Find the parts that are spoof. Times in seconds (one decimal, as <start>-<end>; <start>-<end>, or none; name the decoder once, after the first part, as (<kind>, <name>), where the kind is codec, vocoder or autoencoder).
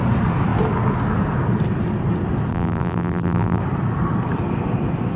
2.5-3.6 (vocoder, BigVGAN v2)